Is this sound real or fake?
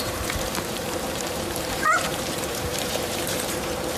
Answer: fake